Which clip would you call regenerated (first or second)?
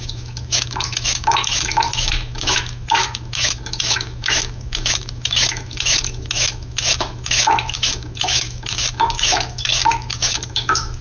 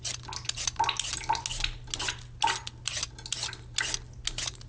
first